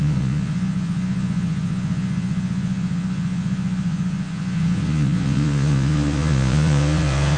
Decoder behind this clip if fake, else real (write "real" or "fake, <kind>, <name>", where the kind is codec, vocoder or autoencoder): fake, vocoder, Vocos